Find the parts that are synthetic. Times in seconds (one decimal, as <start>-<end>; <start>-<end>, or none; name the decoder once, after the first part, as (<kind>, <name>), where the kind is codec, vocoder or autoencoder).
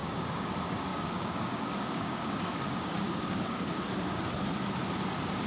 0.0-0.5 (codec, DAC); 0.9-4.2